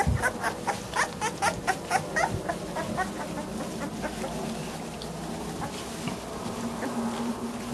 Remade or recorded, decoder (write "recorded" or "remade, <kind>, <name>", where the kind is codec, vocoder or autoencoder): recorded